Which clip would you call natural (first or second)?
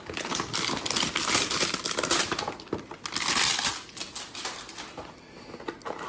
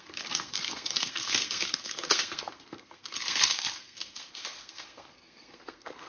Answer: first